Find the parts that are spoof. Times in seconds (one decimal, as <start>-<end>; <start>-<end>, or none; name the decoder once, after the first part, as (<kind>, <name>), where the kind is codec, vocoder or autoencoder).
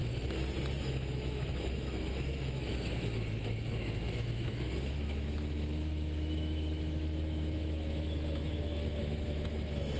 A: 0.8-10.0 (autoencoder, DAC-VAE)